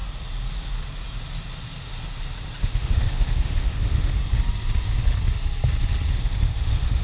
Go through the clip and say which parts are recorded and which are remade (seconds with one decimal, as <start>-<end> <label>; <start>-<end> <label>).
0.0-2.6 recorded; 2.6-4.2 remade; 4.2-6.1 recorded; 6.1-7.0 remade